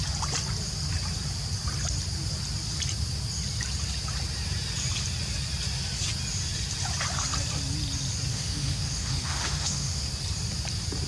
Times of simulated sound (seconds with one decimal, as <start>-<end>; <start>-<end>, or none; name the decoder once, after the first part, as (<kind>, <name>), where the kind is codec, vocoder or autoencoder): 8.3-10.1 (autoencoder, DAC-VAE)